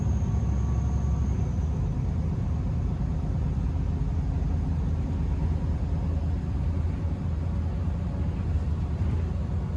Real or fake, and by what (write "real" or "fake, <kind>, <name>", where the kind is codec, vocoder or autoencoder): real